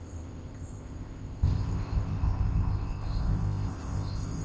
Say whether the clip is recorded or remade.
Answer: remade